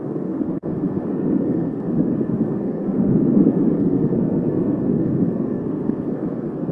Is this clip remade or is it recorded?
remade